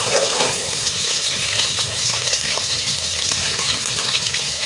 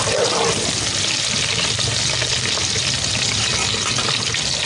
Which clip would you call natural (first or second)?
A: second